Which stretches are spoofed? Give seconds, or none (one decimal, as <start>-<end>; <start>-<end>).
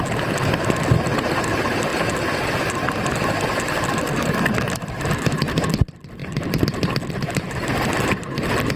none